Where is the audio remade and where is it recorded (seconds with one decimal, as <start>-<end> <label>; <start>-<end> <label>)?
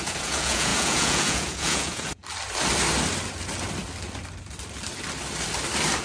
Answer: 0.0-2.2 remade; 2.2-6.0 recorded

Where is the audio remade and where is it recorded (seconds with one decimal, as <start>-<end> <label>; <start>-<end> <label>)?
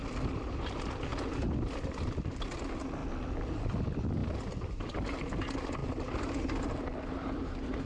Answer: 0.0-7.9 recorded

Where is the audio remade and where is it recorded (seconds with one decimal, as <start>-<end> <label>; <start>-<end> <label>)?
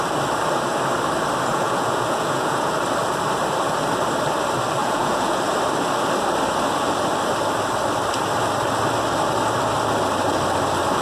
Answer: 0.0-1.5 recorded; 1.5-2.7 remade; 2.7-4.8 recorded; 4.8-5.4 remade; 5.4-11.0 recorded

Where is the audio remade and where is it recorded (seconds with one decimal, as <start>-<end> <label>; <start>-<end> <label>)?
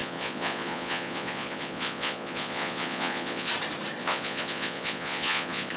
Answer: 0.0-3.5 remade; 3.5-4.0 recorded; 4.0-5.8 remade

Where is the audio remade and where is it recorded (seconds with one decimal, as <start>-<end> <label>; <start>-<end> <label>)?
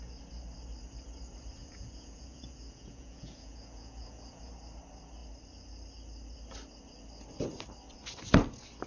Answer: 0.0-1.6 recorded; 1.6-4.5 remade; 4.5-8.9 recorded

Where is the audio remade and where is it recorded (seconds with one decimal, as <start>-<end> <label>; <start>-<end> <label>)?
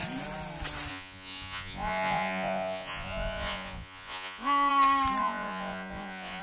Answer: 0.0-0.9 recorded; 0.9-4.7 remade; 4.7-5.2 recorded; 5.2-6.4 remade